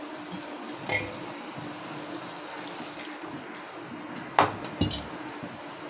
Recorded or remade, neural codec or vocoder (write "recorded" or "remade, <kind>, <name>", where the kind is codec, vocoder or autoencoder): recorded